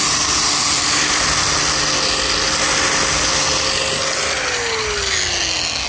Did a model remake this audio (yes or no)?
no